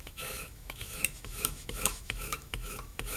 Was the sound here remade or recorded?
remade